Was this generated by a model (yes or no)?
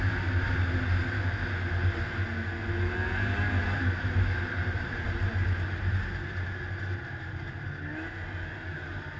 no